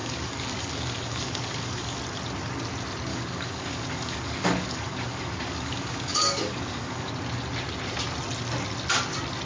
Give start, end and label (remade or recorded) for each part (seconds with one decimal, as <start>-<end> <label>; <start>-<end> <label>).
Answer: 0.0-2.0 remade; 2.0-3.1 recorded; 3.1-7.1 remade; 7.1-9.4 recorded